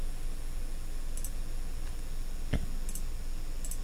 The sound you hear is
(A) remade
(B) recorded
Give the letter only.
B